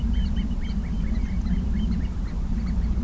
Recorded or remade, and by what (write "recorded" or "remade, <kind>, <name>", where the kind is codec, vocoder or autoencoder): remade, vocoder, BigVGAN v2